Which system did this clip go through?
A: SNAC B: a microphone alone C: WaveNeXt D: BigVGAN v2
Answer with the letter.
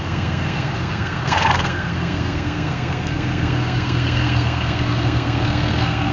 A